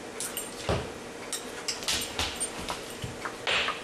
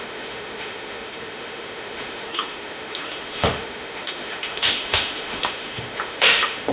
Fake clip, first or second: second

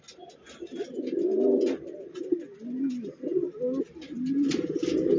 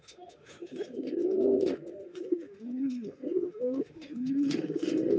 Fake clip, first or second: second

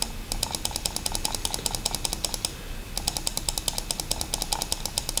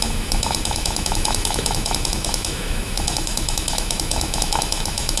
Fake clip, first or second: second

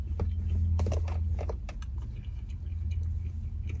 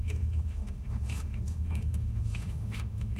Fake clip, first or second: second